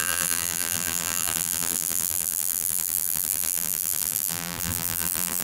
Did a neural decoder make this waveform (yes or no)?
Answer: yes